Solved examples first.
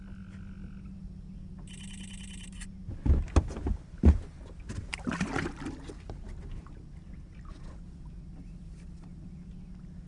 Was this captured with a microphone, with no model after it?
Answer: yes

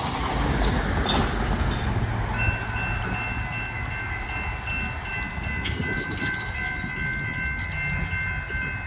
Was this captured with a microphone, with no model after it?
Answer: yes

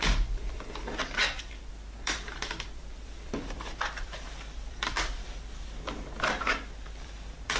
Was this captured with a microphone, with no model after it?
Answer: no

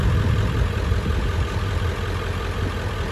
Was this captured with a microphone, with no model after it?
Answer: yes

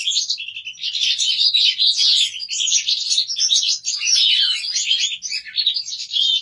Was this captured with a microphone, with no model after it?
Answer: yes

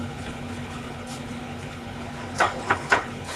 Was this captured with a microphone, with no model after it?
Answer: no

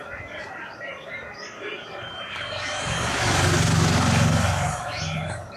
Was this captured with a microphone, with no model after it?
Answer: no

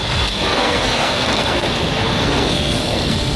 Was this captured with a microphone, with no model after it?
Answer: no